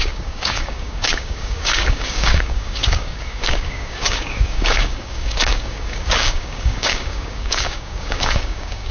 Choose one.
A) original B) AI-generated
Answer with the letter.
B